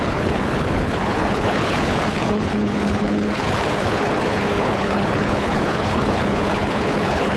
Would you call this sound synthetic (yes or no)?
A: yes